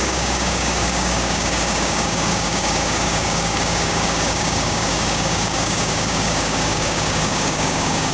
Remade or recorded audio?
remade